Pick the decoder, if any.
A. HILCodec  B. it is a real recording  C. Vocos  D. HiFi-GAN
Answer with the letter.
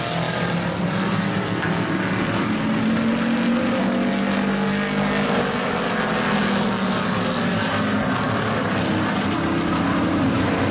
B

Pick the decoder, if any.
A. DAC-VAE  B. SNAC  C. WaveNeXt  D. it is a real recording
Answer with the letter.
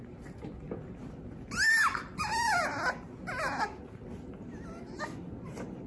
D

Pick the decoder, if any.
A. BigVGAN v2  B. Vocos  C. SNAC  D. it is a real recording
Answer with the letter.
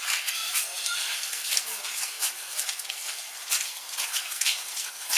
C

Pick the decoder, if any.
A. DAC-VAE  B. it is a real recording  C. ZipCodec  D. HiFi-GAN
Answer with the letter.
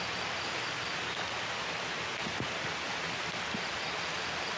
B